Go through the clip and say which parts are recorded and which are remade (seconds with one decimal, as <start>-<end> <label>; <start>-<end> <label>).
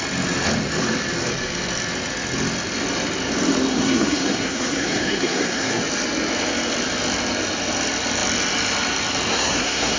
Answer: 0.0-3.7 recorded; 3.7-5.8 remade; 5.8-9.3 recorded; 9.3-10.0 remade